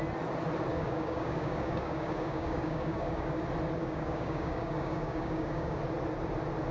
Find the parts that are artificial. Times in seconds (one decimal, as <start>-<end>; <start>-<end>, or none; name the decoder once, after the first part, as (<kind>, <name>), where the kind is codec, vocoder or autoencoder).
0.7-3.4 (codec, DAC); 3.8-5.8